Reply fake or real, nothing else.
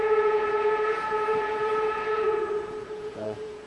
fake